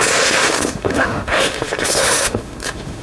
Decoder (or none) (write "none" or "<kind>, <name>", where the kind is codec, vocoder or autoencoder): autoencoder, DAC-VAE